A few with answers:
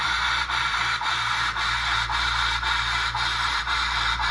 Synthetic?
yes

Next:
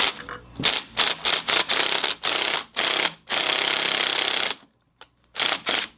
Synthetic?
no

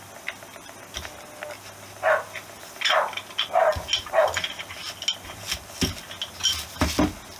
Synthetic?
no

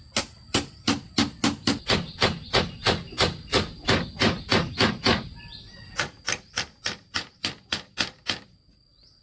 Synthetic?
no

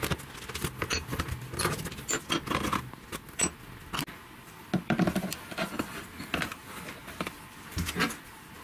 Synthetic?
no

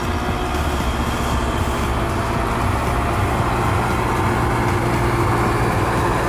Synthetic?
no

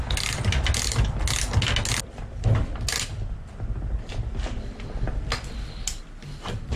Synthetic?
no